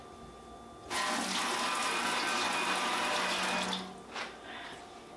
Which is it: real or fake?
real